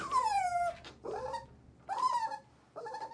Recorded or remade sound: remade